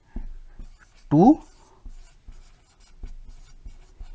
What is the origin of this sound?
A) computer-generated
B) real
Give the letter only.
B